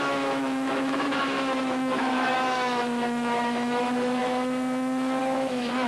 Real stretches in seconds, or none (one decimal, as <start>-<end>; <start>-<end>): none